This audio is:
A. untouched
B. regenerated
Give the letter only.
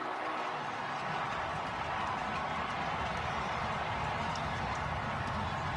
A